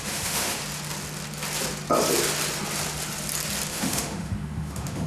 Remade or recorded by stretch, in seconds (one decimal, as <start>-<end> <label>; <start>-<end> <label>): 0.0-0.6 remade; 0.6-3.7 recorded; 3.7-5.1 remade